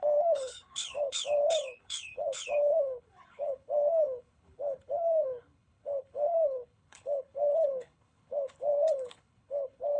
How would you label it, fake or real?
fake